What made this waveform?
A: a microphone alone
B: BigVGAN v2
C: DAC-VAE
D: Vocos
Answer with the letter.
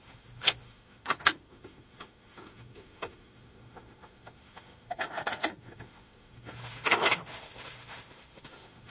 C